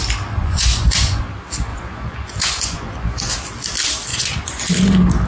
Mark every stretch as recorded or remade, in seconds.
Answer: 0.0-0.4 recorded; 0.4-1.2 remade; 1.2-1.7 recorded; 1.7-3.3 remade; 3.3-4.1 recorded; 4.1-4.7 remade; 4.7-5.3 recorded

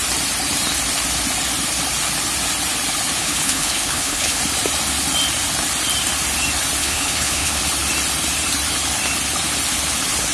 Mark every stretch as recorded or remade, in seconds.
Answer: 0.0-3.2 recorded; 3.2-4.4 remade; 4.4-6.8 recorded; 6.8-7.6 remade; 7.6-10.3 recorded

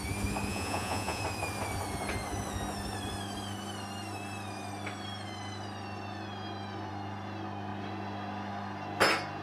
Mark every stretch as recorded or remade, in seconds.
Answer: 0.0-0.5 recorded; 0.5-1.2 remade; 1.2-9.4 recorded

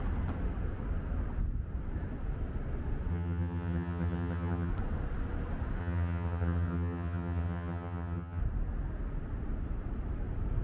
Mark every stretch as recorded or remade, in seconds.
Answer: 0.0-3.1 recorded; 3.1-4.7 remade; 4.7-5.8 recorded; 5.8-8.4 remade; 8.4-10.6 recorded

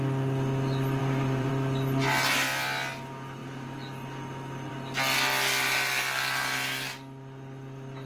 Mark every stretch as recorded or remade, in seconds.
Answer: 0.0-1.0 recorded; 1.0-1.5 remade; 1.5-8.1 recorded

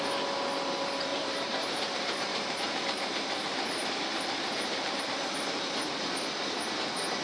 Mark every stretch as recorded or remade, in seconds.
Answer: 0.0-1.1 recorded; 1.1-5.0 remade; 5.0-7.2 recorded

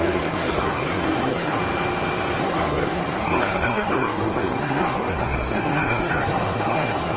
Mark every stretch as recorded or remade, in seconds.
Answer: 0.0-1.6 remade; 1.6-2.4 recorded; 2.4-7.2 remade

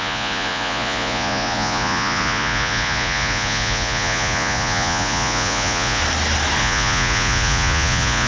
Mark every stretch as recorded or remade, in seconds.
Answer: 0.0-6.0 remade; 6.0-6.6 recorded; 6.6-8.3 remade